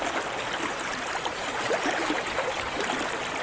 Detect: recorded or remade recorded